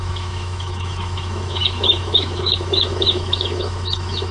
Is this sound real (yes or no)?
no